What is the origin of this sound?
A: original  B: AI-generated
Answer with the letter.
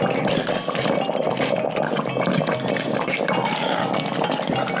A